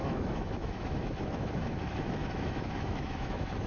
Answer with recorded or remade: remade